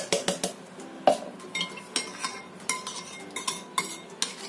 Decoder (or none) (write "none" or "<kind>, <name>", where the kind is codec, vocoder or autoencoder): none